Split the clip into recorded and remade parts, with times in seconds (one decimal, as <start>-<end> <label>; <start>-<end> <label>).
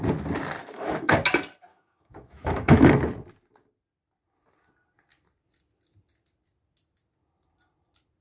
0.0-0.6 recorded; 0.6-1.1 remade; 1.1-1.7 recorded; 1.7-2.9 remade; 2.9-8.2 recorded